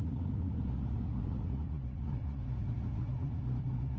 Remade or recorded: remade